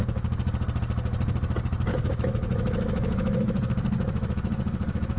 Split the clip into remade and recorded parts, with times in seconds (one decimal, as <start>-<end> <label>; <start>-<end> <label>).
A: 0.0-1.9 recorded; 1.9-5.2 remade